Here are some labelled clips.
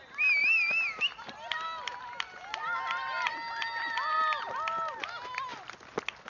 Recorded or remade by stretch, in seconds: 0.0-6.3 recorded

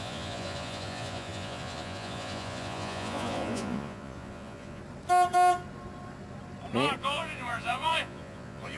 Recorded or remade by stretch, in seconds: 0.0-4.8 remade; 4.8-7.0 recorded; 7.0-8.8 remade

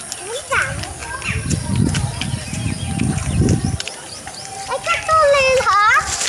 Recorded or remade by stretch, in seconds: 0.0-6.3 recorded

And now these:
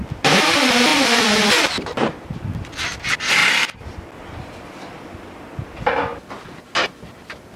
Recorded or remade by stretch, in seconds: 0.0-3.4 remade; 3.4-7.0 recorded; 7.0-7.6 remade